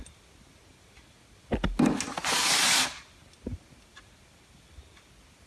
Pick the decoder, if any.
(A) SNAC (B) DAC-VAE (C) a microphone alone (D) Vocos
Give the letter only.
C